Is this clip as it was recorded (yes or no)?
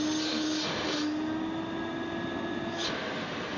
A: yes